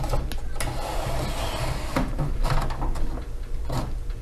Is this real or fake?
real